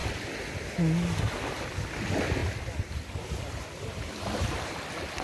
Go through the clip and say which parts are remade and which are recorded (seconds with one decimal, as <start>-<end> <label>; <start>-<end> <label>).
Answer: 0.0-5.2 recorded